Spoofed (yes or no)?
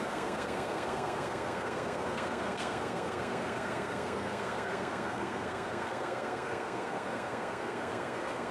yes